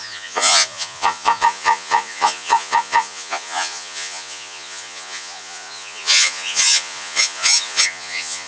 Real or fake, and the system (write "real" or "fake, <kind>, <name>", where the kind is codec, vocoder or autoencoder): fake, vocoder, Vocos